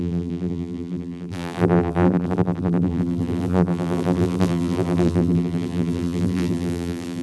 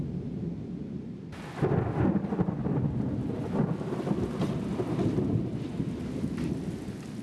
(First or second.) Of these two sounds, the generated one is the first